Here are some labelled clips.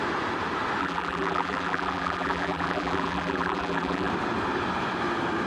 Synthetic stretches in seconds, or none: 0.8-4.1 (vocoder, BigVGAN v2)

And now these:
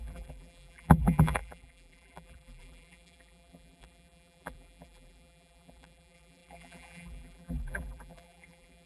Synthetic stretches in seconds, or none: 0.0-8.9 (vocoder, BigVGAN v2)

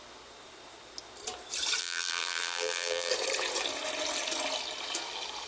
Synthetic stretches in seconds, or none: 1.8-3.1 (vocoder, BigVGAN v2)

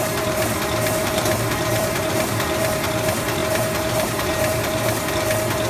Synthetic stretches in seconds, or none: 1.0-2.7 (vocoder, BigVGAN v2); 3.4-5.1

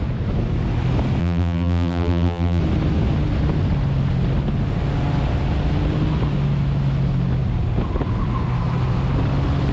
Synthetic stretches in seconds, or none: 1.2-2.6 (vocoder, BigVGAN v2)